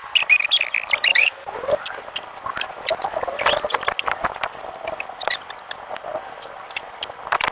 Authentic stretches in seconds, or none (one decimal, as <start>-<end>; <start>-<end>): 0.0-1.1; 1.8-7.5